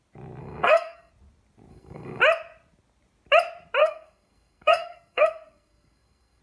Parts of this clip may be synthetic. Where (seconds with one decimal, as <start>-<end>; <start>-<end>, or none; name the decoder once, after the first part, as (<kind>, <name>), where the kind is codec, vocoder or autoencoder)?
0.4-1.1 (codec, SNAC); 1.7-2.2; 3.8-6.4